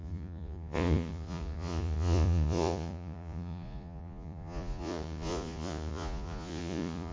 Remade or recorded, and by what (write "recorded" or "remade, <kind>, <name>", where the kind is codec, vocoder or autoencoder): remade, vocoder, Vocos